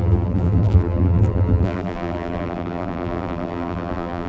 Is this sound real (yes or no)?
no